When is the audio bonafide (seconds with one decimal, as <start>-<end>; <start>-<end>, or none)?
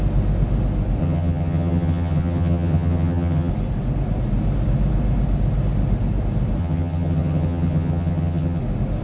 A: 0.0-1.0; 3.5-6.6; 8.6-9.0